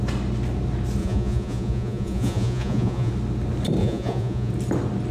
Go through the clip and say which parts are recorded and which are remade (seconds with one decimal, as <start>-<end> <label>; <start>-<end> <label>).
0.0-1.0 recorded; 1.0-3.1 remade; 3.1-3.8 recorded; 3.8-4.5 remade; 4.5-5.1 recorded